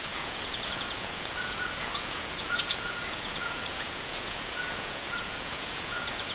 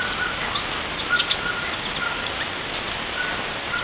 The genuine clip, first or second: second